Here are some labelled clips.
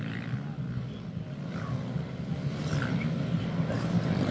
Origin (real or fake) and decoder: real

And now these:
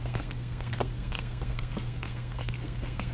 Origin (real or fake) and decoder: fake, codec, SNAC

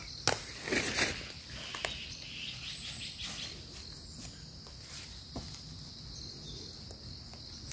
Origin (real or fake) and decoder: real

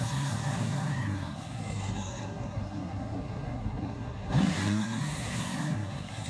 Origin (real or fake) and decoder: fake, codec, SNAC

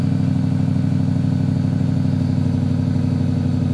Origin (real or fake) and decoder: real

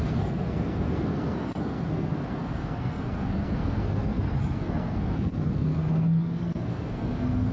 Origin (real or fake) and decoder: fake, codec, SNAC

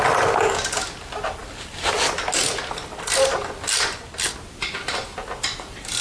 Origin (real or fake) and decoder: real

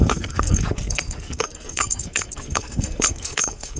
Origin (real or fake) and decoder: fake, codec, SNAC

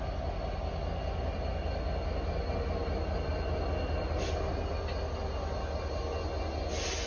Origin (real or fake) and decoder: real